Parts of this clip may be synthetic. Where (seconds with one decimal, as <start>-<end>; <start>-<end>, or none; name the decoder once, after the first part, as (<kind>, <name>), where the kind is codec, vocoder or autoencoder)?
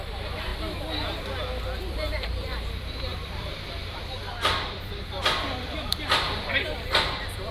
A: 0.0-0.5 (vocoder, BigVGAN v2); 1.8-7.5